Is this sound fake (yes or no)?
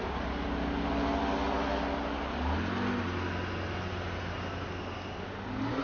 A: no